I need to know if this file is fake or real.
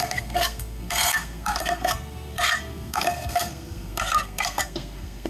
fake